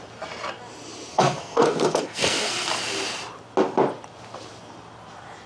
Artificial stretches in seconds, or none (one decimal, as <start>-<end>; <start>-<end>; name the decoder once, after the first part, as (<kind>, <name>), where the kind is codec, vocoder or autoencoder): 1.1-2.7 (codec, SNAC)